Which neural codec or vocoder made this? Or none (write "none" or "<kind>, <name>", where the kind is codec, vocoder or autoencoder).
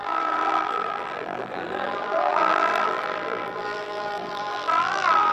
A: vocoder, BigVGAN v2